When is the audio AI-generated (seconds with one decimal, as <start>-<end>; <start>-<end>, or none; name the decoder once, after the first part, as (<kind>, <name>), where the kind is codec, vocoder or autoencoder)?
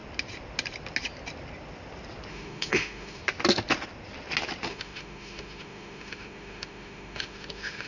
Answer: 2.3-3.2 (autoencoder, DAC-VAE); 4.7-7.9